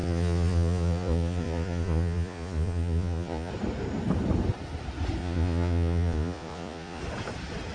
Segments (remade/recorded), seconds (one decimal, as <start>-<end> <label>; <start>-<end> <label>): 0.0-3.5 remade; 3.5-5.2 recorded; 5.2-7.0 remade; 7.0-7.7 recorded